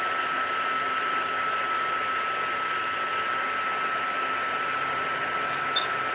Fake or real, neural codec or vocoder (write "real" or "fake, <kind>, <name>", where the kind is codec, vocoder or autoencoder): real